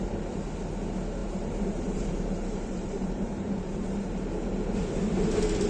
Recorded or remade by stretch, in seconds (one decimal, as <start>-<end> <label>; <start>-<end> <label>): 0.0-1.2 recorded; 1.2-4.1 remade; 4.1-5.7 recorded